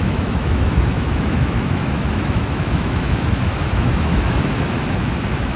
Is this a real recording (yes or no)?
no